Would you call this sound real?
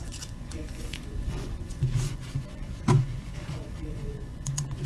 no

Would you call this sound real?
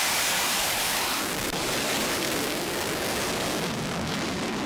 no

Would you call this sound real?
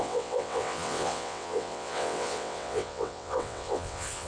no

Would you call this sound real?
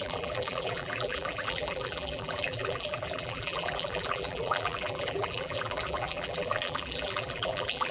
no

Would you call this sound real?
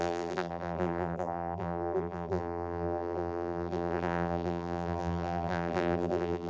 no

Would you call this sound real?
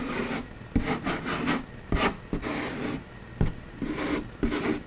yes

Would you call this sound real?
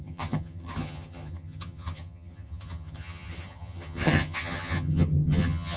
no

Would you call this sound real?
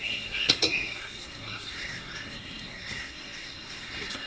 no